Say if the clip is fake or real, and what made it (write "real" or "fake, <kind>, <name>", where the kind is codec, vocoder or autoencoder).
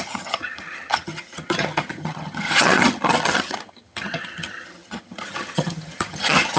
fake, vocoder, HiFi-GAN